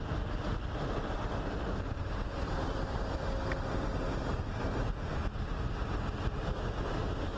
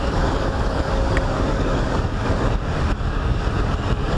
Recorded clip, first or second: first